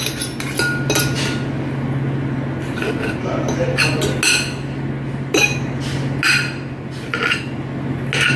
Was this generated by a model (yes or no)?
no